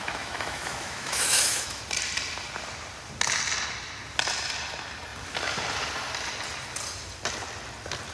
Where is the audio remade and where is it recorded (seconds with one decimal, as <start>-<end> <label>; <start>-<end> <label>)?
0.0-1.8 remade; 1.8-8.1 recorded